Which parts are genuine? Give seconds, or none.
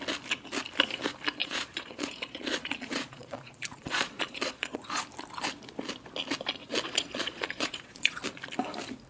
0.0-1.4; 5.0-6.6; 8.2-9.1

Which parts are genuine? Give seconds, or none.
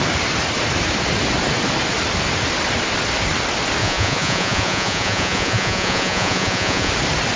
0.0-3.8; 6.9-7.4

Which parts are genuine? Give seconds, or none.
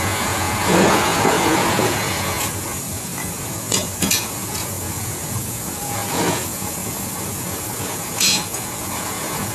none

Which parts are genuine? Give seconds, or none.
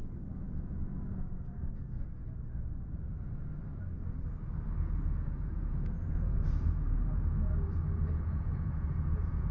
0.0-4.8